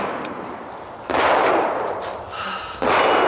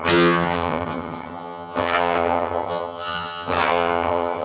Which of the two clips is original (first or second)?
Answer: first